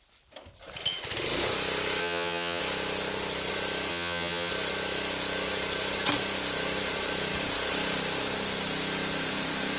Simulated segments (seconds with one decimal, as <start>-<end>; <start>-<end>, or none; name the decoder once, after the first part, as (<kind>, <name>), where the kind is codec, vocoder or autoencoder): 2.0-2.6 (vocoder, HiFi-GAN); 3.9-4.5